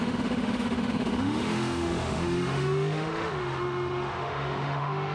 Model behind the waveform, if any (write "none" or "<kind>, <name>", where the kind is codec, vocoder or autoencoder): autoencoder, DAC-VAE